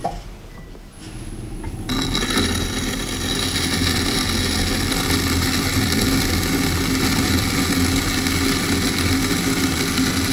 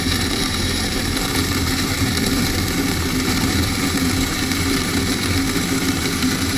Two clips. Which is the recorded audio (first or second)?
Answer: first